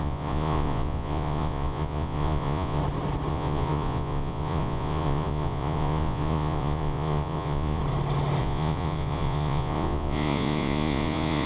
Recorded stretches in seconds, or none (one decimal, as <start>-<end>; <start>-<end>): 2.8-3.3; 7.8-8.4